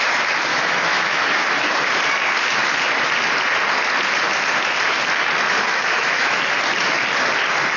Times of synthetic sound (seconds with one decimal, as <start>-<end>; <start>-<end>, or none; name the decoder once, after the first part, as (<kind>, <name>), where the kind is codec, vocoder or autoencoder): 0.5-1.7 (autoencoder, DAC-VAE); 5.7-6.4